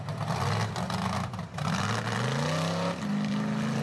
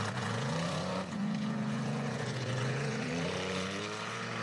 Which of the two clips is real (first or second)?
first